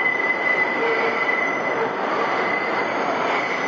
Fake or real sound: real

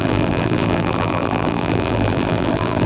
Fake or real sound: fake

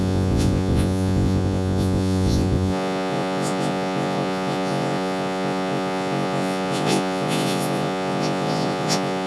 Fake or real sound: fake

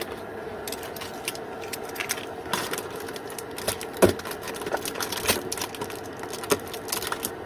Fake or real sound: real